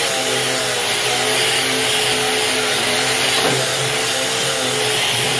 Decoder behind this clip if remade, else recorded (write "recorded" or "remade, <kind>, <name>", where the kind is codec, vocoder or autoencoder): recorded